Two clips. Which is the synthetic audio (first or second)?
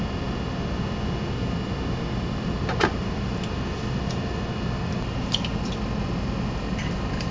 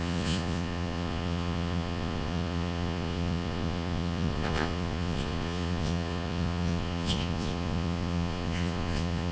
second